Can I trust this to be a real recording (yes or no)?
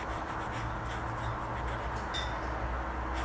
yes